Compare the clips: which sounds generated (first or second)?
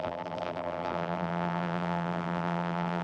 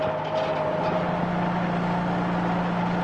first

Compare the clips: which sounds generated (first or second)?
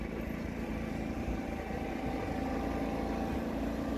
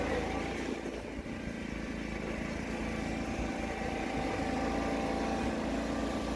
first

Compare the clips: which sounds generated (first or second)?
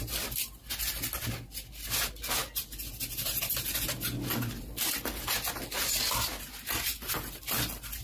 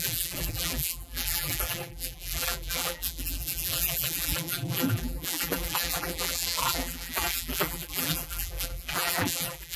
second